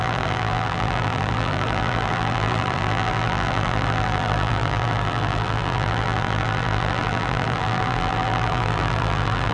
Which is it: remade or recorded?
remade